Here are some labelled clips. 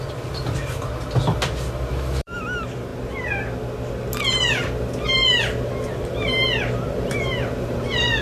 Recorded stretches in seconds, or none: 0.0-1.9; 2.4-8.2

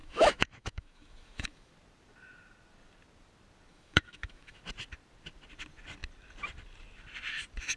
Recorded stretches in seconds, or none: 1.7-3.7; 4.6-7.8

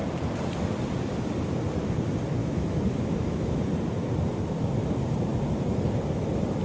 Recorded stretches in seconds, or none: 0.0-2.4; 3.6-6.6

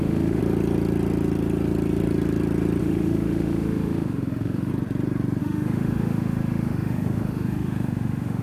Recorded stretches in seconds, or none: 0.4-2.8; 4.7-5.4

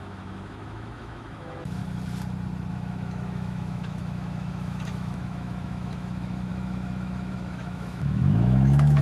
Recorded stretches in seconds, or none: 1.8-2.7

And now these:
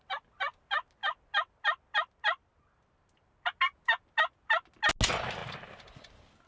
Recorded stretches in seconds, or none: 0.0-6.5

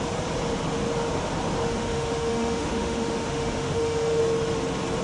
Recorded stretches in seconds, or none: 0.0-1.7; 4.2-5.0